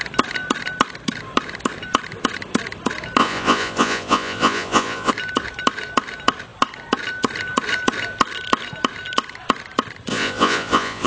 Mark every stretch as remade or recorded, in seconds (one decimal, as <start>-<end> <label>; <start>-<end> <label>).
0.0-3.2 recorded; 3.2-5.1 remade; 5.1-10.1 recorded; 10.1-11.1 remade